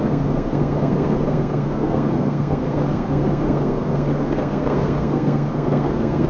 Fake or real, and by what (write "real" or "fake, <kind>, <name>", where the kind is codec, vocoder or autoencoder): fake, codec, SNAC